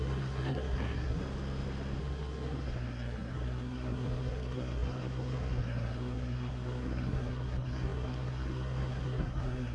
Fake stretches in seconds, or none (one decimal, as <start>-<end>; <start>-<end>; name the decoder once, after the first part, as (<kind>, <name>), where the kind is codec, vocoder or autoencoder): 0.0-1.2 (codec, SNAC); 2.0-9.7